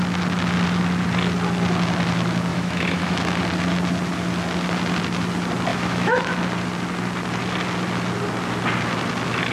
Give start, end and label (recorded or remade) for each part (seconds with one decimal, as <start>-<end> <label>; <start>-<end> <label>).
0.0-2.5 recorded; 2.5-3.4 remade; 3.4-5.7 recorded; 5.7-6.3 remade; 6.3-9.5 recorded